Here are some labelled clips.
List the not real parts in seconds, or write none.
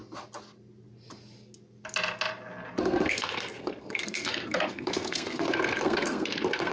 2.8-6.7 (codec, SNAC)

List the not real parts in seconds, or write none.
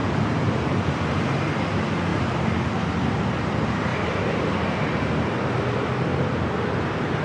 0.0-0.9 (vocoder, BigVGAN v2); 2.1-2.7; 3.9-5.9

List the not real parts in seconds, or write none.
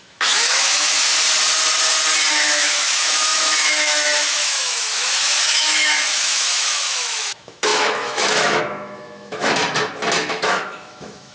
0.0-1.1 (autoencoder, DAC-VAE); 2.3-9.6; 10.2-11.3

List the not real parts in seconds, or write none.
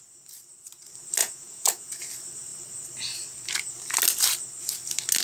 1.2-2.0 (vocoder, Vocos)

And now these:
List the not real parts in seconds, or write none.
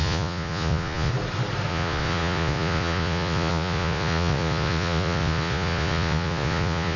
0.0-1.1 (vocoder, Vocos); 1.7-7.0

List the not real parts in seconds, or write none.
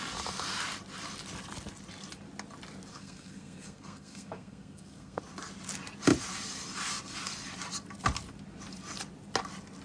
2.9-5.2 (codec, SNAC)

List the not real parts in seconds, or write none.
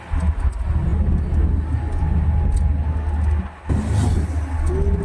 none